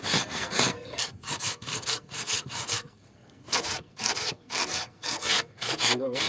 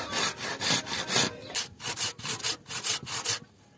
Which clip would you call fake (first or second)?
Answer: first